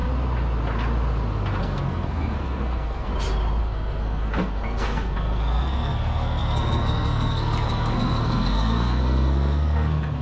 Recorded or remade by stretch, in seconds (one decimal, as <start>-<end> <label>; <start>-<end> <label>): 0.0-1.6 recorded; 1.6-3.1 remade; 3.1-3.6 recorded; 3.6-10.2 remade